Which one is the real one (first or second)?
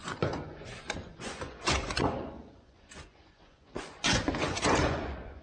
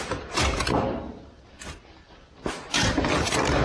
second